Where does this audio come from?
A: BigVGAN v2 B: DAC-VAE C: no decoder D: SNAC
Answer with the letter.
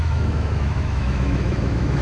B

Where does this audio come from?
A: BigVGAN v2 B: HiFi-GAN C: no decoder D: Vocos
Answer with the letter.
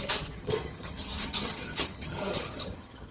B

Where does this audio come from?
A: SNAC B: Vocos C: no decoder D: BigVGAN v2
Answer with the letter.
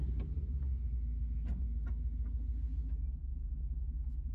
C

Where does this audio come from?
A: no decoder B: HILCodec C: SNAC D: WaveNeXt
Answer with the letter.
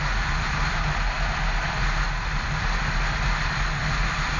A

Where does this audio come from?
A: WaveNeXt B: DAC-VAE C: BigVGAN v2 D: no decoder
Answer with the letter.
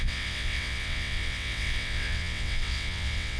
A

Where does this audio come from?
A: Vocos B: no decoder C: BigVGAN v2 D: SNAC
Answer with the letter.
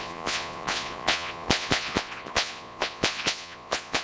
A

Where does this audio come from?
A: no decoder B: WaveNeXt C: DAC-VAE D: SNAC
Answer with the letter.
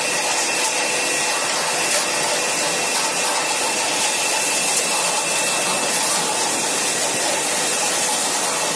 A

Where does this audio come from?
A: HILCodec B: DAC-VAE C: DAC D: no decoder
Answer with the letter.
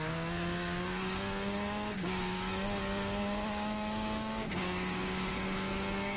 C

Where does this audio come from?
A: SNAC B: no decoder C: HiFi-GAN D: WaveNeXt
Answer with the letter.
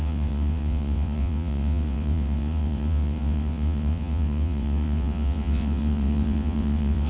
D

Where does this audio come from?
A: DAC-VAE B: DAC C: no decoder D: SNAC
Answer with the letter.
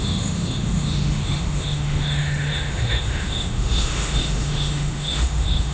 A